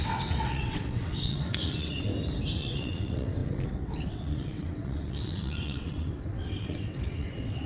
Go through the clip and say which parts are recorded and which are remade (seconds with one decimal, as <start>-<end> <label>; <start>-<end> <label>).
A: 0.0-2.1 remade; 2.1-2.6 recorded; 2.6-7.7 remade